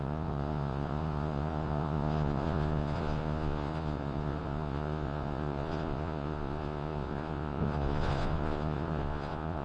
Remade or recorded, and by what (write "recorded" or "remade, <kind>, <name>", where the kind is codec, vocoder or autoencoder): remade, vocoder, Vocos